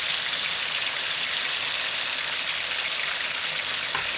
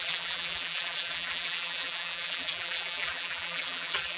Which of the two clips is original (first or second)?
first